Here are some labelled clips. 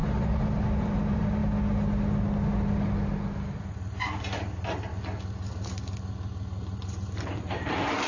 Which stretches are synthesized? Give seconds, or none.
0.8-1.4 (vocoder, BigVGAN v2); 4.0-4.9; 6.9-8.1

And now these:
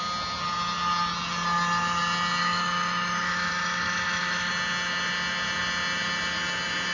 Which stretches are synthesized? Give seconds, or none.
2.4-4.5 (autoencoder, DAC-VAE)

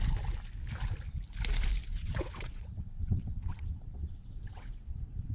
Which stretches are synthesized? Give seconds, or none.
1.9-5.3 (vocoder, WaveNeXt)